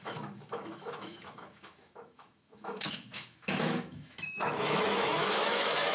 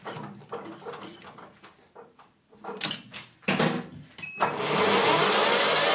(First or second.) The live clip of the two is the second